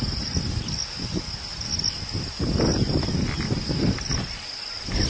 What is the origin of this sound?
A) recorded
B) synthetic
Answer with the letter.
A